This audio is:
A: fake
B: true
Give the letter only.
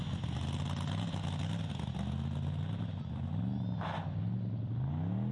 B